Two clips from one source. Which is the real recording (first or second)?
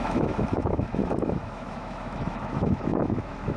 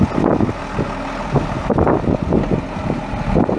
second